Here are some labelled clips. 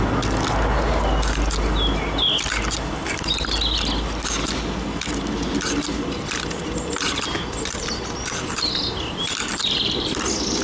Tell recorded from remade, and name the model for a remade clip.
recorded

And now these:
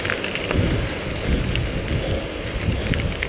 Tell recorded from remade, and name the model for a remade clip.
recorded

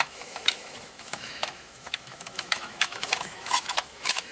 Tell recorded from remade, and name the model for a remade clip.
remade, autoencoder, DAC-VAE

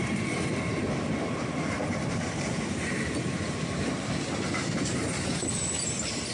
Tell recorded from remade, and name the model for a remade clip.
remade, vocoder, BigVGAN v2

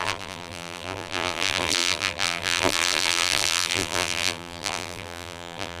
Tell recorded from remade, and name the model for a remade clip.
remade, vocoder, BigVGAN v2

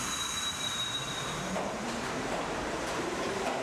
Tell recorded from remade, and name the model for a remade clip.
remade, vocoder, BigVGAN v2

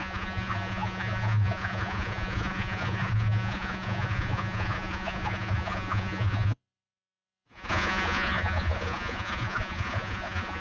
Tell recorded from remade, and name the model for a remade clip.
remade, vocoder, Vocos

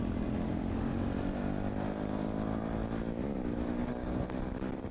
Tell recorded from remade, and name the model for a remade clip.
recorded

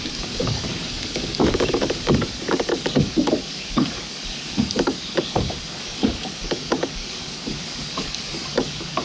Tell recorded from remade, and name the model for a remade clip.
remade, codec, DAC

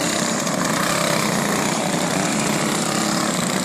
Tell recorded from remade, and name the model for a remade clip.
remade, vocoder, BigVGAN v2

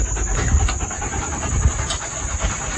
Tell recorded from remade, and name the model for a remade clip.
recorded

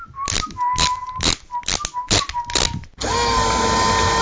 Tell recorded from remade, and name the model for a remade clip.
recorded